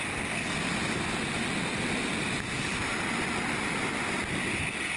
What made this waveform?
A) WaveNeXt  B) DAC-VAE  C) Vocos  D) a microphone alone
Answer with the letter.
D